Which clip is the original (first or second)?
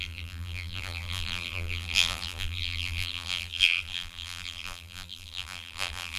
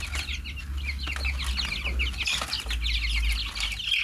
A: second